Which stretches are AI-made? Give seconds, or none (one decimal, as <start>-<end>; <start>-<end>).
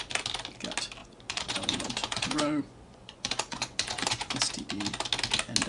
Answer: 1.0-4.4